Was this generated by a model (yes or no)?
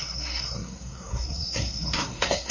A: yes